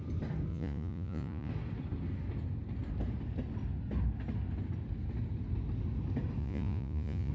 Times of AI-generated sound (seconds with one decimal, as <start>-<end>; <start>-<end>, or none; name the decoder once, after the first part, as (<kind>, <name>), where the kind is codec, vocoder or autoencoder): 0.5-1.5 (vocoder, Vocos); 6.4-7.3